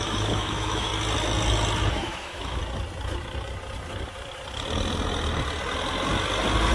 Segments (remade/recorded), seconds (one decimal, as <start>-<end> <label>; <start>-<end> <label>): 0.0-0.9 remade; 0.9-1.9 recorded; 1.9-2.6 remade; 2.6-6.7 recorded